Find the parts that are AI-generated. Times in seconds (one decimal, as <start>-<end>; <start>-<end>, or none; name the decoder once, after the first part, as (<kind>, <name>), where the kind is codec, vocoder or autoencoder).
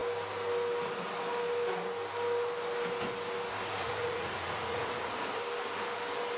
3.8-5.4 (vocoder, Vocos)